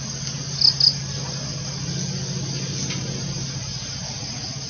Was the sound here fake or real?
real